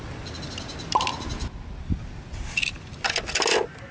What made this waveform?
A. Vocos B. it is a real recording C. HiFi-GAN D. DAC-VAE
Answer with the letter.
B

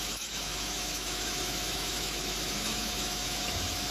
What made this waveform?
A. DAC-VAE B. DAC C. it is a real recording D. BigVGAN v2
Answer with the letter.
A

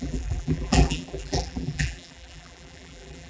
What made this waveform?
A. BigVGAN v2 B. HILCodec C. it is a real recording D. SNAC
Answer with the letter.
A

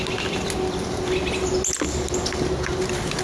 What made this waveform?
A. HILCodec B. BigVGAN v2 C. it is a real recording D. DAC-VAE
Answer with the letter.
C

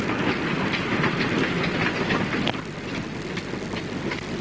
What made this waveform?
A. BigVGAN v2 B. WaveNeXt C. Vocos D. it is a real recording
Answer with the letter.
D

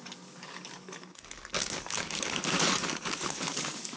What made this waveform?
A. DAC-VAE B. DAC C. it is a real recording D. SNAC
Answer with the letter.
B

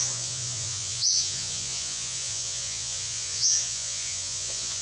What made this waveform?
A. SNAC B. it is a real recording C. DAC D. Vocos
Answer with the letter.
D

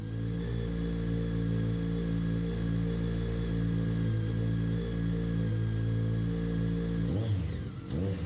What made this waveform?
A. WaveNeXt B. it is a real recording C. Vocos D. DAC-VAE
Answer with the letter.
B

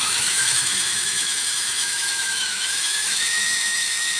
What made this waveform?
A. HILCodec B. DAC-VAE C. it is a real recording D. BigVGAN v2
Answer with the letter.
B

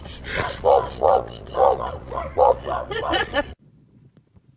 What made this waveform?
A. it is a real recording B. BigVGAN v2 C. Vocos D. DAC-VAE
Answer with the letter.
C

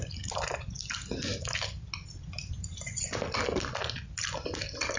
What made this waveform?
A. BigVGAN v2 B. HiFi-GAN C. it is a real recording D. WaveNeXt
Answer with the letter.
C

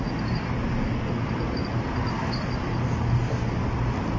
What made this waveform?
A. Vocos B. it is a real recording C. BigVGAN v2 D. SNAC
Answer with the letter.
B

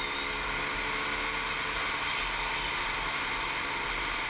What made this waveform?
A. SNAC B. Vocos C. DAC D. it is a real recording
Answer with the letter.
D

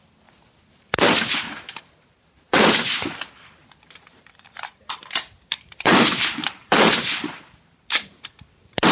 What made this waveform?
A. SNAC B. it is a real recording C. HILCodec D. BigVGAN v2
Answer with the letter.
D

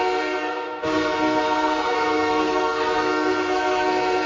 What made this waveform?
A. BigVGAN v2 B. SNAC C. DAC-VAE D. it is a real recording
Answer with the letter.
B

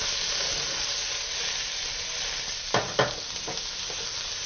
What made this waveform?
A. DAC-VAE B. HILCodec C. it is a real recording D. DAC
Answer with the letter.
C